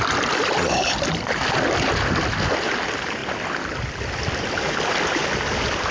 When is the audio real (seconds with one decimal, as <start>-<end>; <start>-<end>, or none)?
0.0-5.9

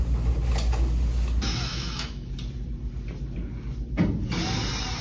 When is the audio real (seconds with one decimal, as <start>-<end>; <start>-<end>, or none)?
0.0-1.5; 2.3-5.0